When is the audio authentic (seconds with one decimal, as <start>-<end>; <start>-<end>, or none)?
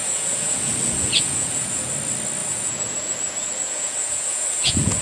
1.9-2.4